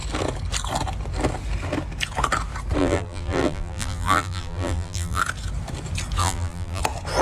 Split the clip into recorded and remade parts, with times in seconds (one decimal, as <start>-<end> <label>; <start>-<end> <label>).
0.0-2.8 recorded; 2.8-5.2 remade; 5.2-6.2 recorded; 6.2-6.8 remade; 6.8-7.2 recorded